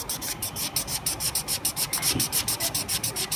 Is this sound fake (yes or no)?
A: no